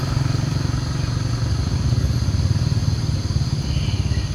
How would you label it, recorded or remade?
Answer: recorded